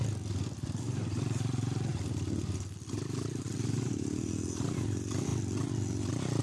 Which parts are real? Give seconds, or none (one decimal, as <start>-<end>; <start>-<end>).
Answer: 5.3-6.4